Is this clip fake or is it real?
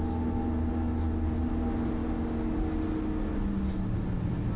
real